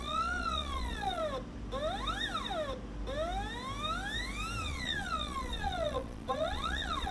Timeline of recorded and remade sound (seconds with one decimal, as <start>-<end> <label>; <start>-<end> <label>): 0.0-1.2 remade; 1.2-4.6 recorded; 4.6-7.1 remade